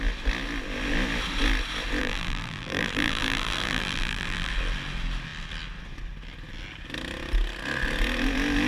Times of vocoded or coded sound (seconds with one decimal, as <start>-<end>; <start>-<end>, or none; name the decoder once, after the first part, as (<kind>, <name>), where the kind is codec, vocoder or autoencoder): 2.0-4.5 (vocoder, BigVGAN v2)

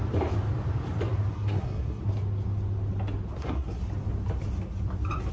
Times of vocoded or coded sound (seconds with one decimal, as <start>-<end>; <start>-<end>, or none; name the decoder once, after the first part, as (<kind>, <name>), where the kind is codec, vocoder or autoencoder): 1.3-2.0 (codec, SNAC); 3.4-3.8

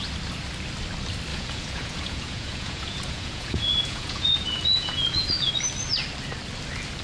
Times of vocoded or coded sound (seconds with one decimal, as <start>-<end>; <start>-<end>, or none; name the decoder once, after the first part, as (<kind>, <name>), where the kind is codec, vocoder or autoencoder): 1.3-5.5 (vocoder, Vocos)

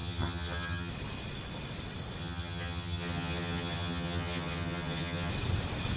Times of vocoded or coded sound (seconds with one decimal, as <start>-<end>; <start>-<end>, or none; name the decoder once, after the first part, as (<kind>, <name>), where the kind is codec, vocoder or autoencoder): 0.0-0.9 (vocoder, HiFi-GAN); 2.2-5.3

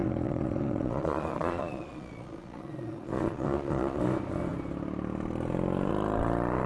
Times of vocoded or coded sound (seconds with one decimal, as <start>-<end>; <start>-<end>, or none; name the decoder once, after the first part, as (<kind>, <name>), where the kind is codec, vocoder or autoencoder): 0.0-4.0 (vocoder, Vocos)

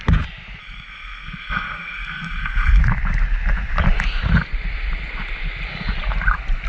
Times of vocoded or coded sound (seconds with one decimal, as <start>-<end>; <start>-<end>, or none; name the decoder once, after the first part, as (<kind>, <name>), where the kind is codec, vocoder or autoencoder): 0.6-2.8 (codec, SNAC)

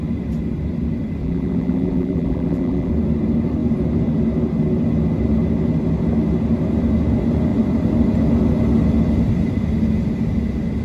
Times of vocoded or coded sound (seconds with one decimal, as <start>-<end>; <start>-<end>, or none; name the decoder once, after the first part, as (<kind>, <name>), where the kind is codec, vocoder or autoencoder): 1.2-2.9 (vocoder, BigVGAN v2)

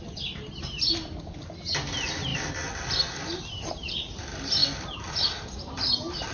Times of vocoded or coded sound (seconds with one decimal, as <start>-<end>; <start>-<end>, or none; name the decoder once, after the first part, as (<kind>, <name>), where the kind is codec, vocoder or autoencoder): none